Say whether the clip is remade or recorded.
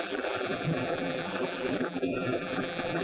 remade